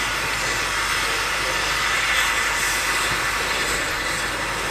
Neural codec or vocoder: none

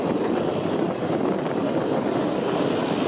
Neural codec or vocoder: none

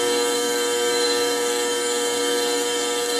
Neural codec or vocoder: codec, DAC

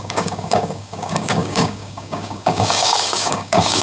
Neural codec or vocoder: codec, DAC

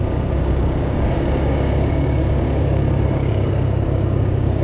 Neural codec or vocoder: codec, DAC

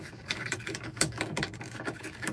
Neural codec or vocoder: codec, DAC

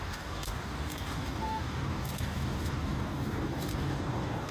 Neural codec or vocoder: codec, DAC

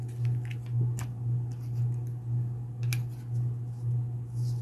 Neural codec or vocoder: none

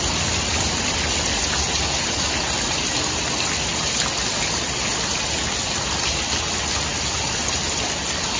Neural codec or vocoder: none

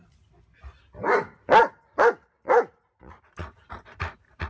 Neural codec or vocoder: none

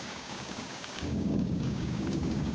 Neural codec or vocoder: codec, DAC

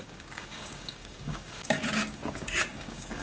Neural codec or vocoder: codec, DAC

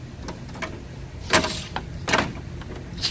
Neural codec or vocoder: none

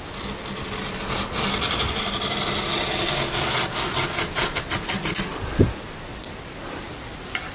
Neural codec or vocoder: none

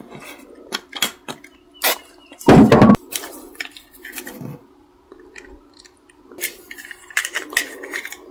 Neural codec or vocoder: none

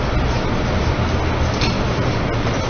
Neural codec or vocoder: none